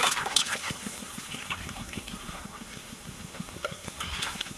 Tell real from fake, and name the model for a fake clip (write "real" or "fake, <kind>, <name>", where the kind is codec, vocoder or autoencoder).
fake, codec, SNAC